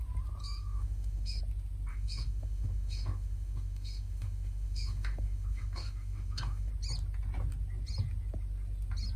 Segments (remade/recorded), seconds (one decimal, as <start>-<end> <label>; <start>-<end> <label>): 0.0-0.4 recorded; 0.4-1.4 remade; 1.4-1.9 recorded; 1.9-6.7 remade; 6.7-9.2 recorded